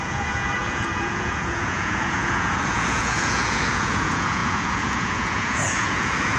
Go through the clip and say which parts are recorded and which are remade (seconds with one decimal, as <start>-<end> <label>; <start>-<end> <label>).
0.0-6.4 remade